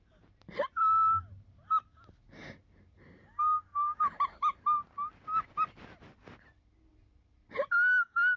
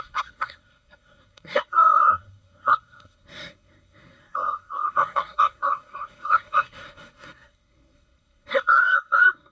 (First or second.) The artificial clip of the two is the second